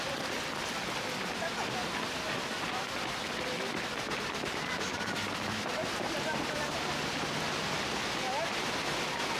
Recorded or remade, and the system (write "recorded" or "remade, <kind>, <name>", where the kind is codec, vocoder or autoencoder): recorded